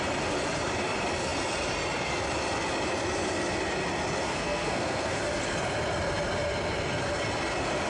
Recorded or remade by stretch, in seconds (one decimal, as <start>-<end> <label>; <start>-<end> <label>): 0.0-4.2 recorded; 4.2-5.2 remade; 5.2-7.9 recorded